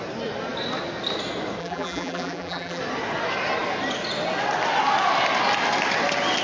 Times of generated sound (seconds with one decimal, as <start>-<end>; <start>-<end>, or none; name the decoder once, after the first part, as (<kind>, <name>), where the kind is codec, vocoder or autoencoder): 1.6-2.8 (vocoder, BigVGAN v2)